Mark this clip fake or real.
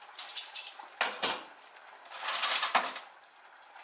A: real